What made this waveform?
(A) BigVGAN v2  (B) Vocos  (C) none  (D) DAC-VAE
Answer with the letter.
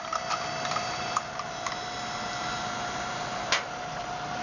A